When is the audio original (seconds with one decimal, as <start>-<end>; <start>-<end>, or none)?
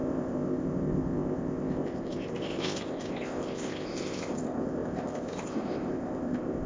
none